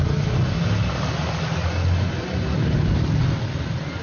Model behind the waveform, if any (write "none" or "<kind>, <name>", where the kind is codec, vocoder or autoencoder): none